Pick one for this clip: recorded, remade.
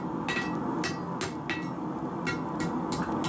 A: recorded